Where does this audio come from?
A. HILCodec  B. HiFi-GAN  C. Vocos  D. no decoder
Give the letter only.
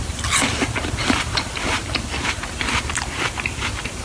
D